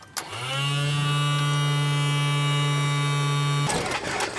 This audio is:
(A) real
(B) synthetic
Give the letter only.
A